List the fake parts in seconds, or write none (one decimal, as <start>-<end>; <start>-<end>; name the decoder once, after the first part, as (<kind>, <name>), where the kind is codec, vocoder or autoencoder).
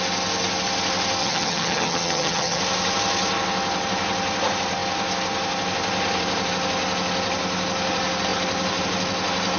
1.2-2.6 (vocoder, HiFi-GAN)